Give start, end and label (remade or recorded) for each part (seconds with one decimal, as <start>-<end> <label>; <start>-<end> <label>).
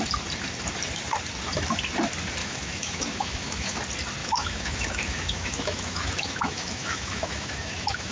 0.0-2.4 recorded; 2.4-3.8 remade; 3.8-4.2 recorded; 4.2-8.1 remade